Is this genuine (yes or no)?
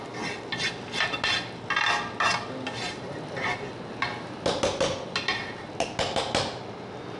yes